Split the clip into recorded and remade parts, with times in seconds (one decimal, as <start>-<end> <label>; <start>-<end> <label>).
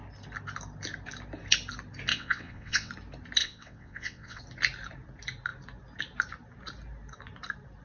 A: 0.0-2.1 recorded; 2.1-2.9 remade; 2.9-3.4 recorded; 3.4-4.4 remade; 4.4-7.8 recorded